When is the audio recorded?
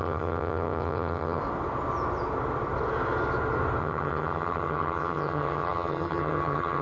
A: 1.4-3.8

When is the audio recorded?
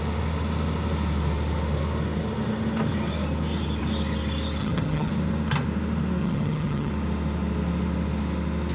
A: 0.0-4.6; 5.1-6.2; 6.9-8.7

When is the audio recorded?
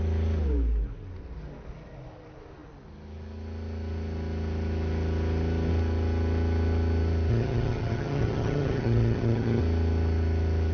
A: 0.0-7.3; 9.6-10.7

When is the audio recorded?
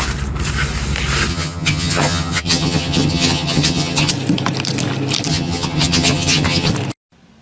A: 0.0-1.3; 4.1-5.3; 6.7-7.4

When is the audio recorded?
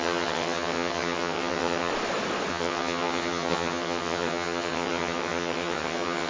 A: 1.9-2.5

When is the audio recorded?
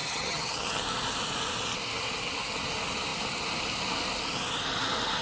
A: 0.8-5.2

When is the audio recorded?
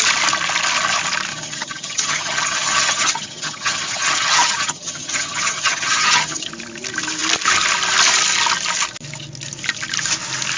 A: 0.0-1.3; 6.5-10.6